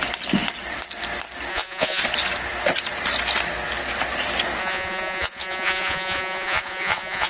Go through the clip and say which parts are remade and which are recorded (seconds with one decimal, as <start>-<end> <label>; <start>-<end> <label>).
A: 0.0-1.5 recorded; 1.5-2.0 remade; 2.0-4.6 recorded; 4.6-7.3 remade